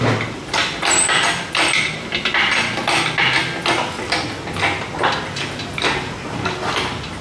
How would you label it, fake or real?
real